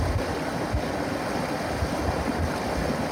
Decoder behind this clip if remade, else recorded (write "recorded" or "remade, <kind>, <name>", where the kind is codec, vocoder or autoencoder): recorded